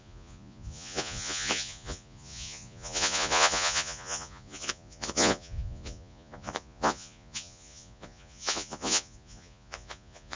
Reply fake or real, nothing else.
fake